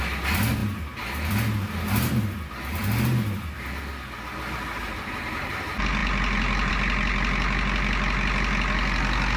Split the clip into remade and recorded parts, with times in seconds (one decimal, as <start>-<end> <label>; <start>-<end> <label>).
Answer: 0.0-9.4 recorded